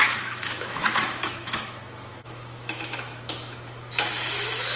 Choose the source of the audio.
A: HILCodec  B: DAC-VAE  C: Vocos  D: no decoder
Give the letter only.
B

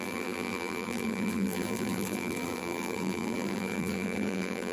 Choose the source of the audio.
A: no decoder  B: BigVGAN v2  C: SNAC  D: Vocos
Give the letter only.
B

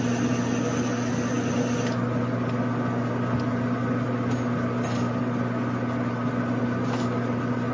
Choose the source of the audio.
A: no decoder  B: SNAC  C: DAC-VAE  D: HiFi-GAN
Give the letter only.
A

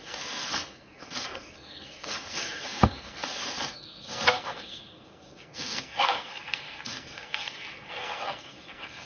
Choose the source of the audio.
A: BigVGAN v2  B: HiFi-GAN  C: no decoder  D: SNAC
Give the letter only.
D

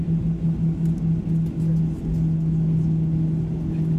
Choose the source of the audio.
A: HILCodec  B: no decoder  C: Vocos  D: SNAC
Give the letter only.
B